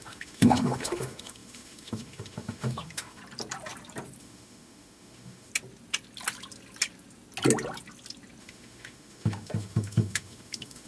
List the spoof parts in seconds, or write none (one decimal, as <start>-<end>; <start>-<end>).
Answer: 0.0-3.2; 4.2-5.5; 8.4-10.9